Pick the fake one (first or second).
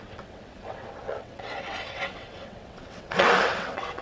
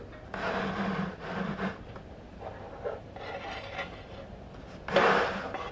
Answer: first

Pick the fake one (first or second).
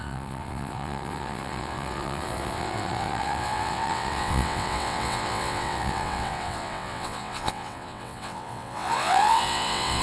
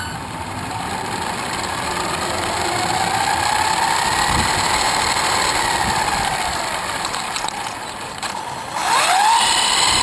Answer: first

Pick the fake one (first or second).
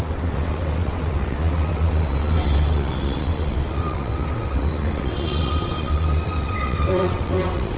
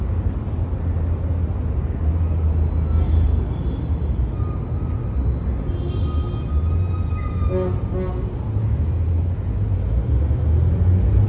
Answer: first